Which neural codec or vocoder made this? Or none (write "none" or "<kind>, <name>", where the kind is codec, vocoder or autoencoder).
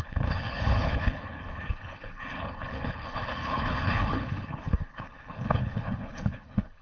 codec, HILCodec